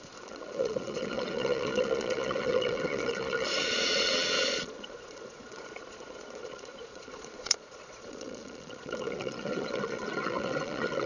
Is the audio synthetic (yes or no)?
yes